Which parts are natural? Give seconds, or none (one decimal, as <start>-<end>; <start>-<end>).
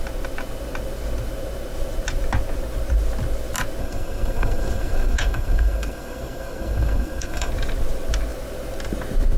0.0-3.8; 7.5-9.4